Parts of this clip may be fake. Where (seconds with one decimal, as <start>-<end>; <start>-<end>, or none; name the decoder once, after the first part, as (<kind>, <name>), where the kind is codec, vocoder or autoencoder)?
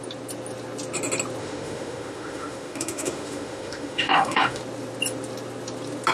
1.4-4.6 (autoencoder, DAC-VAE)